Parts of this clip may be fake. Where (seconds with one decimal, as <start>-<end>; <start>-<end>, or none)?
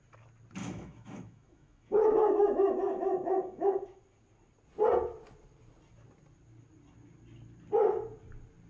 0.6-4.0